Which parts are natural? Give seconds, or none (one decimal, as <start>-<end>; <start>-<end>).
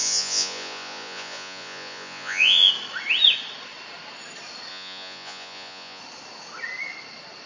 2.7-4.7; 6.0-7.5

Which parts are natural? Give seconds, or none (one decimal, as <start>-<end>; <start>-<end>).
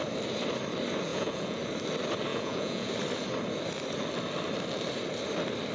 0.0-1.1; 1.6-2.3; 2.9-5.7